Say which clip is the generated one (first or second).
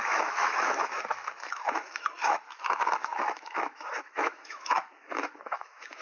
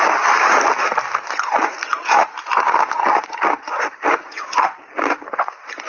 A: first